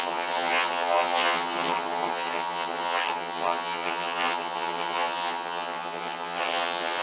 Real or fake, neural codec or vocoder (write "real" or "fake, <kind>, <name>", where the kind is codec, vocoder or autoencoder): fake, vocoder, HiFi-GAN